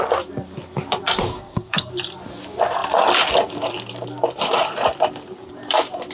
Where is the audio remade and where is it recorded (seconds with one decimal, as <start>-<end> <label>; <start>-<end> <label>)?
0.0-1.3 recorded; 1.3-1.9 remade; 1.9-6.1 recorded